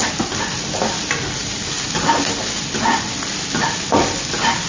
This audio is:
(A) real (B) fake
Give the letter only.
A